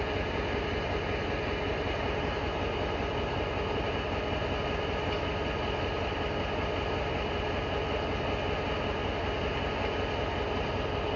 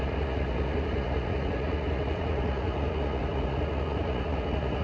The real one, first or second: first